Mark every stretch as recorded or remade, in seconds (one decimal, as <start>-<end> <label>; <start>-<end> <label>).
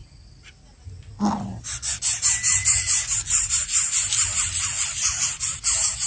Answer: 0.0-6.1 recorded